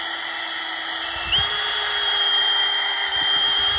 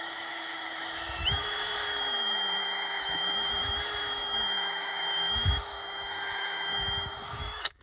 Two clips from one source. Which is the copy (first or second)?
second